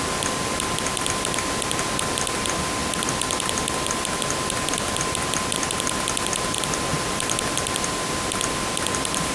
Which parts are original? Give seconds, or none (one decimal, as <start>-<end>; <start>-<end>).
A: 0.0-9.3